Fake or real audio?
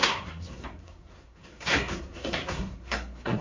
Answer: fake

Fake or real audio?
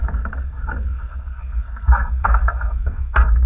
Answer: fake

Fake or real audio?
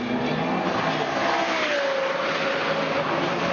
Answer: real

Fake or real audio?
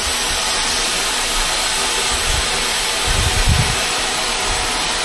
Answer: real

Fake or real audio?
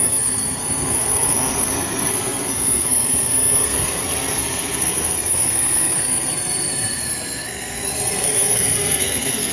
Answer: fake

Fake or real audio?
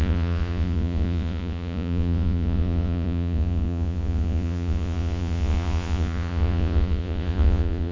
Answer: fake